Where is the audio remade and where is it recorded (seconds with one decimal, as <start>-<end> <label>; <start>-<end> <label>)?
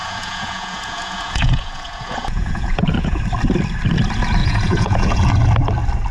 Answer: 0.0-3.2 remade; 3.2-4.4 recorded; 4.4-5.2 remade; 5.2-6.1 recorded